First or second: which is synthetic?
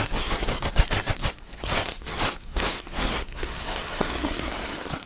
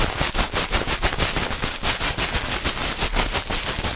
first